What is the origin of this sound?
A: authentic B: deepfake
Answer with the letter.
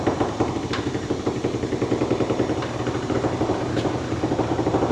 B